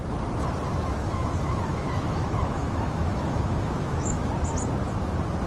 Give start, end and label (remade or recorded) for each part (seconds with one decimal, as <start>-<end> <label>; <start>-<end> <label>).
0.0-1.0 recorded; 1.0-4.3 remade; 4.3-5.5 recorded